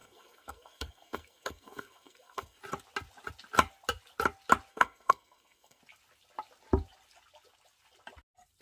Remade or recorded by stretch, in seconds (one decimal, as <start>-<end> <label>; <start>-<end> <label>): 0.0-2.6 remade; 2.6-4.7 recorded; 4.7-5.8 remade; 5.8-8.6 recorded